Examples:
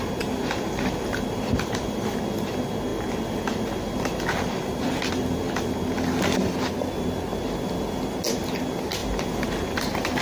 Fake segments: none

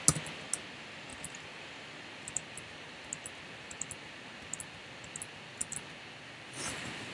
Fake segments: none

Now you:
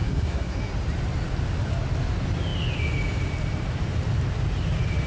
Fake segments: 0.0-0.7 (codec, SNAC)